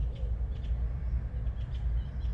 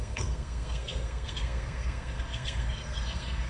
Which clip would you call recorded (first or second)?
first